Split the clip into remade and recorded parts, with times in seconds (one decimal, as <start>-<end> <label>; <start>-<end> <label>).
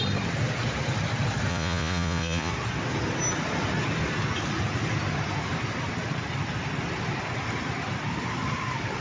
0.0-1.5 recorded; 1.5-2.5 remade; 2.5-9.0 recorded